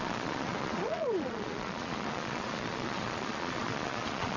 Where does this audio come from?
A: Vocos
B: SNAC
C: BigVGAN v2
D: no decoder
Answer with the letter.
A